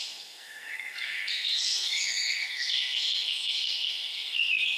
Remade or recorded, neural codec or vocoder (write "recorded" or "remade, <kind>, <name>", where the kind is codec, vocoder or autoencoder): remade, codec, SNAC